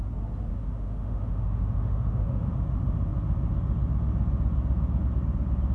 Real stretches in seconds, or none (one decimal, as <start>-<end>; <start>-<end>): 0.0-0.5; 2.5-5.7